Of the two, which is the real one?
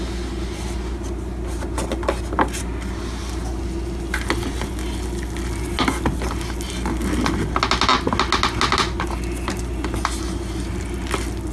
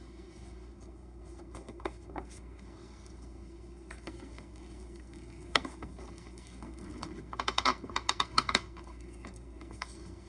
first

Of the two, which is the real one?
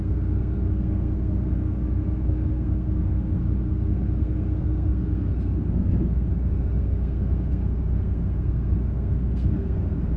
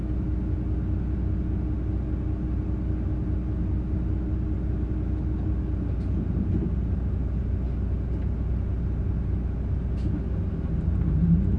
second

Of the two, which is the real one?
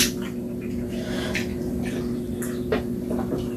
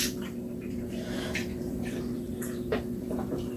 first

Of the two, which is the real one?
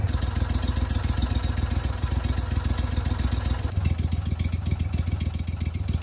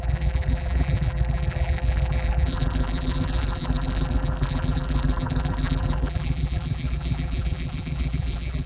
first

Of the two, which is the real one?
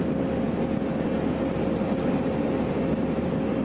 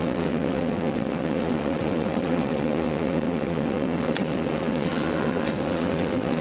first